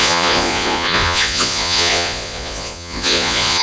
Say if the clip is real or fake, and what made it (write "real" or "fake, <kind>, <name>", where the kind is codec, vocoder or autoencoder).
fake, vocoder, Vocos